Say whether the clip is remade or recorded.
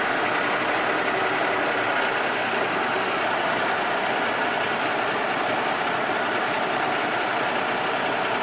recorded